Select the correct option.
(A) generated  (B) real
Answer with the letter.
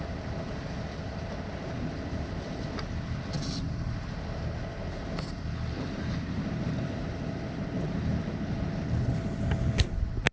B